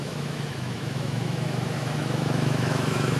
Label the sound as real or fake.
fake